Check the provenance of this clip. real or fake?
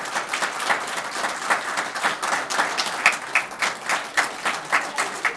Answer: real